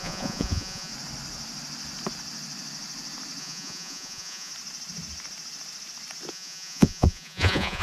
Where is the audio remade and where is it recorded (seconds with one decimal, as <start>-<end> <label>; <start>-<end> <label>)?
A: 0.0-0.9 remade; 0.9-3.4 recorded; 3.4-4.5 remade; 4.5-6.3 recorded; 6.3-7.8 remade